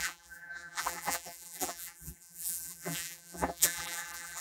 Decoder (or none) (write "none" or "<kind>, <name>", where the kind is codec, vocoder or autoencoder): vocoder, BigVGAN v2